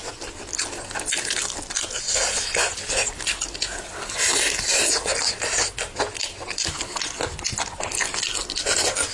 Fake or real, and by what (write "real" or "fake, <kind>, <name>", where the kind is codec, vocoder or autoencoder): real